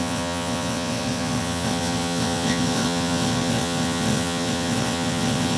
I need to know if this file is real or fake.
fake